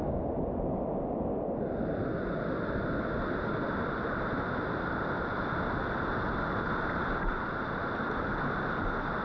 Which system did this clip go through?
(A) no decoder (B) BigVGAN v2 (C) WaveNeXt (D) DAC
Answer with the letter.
A